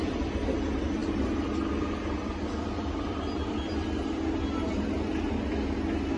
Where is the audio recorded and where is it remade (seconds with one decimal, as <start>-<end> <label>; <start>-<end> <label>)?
0.0-6.2 recorded